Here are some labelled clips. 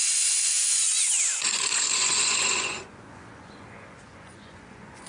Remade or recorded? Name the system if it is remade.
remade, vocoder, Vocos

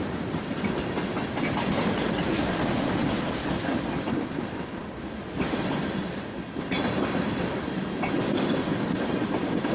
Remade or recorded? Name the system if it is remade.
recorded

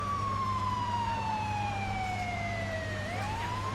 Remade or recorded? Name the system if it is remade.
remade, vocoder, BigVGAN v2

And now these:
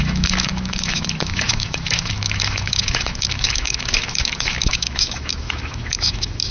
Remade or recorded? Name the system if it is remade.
remade, autoencoder, DAC-VAE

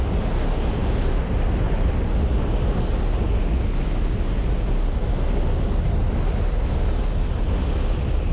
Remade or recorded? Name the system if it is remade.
recorded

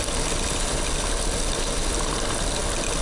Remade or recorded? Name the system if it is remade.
recorded